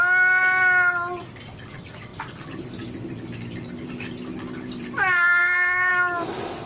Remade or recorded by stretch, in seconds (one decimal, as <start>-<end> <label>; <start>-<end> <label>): 0.0-5.4 recorded; 5.4-5.9 remade; 5.9-6.7 recorded